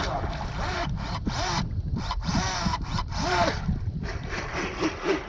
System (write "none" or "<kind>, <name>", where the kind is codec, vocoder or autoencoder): none